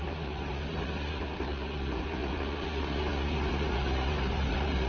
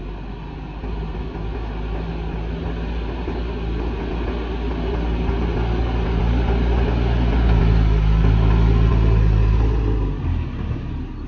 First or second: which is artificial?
first